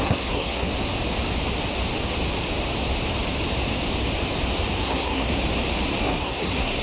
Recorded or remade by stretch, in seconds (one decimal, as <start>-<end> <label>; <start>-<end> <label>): 0.0-0.7 remade; 0.7-4.8 recorded; 4.8-5.3 remade; 5.3-6.0 recorded; 6.0-6.8 remade